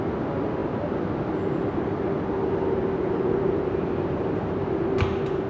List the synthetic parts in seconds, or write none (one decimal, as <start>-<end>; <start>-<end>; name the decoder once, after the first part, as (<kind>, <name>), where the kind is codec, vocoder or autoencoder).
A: 3.0-4.7 (vocoder, BigVGAN v2)